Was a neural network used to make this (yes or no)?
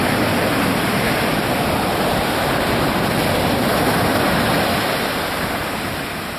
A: no